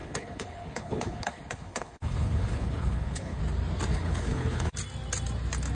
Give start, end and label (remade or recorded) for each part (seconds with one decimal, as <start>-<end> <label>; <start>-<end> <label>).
0.0-3.4 remade; 3.4-3.9 recorded; 3.9-4.7 remade; 4.7-5.7 recorded